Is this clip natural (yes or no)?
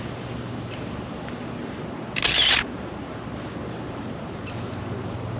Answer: yes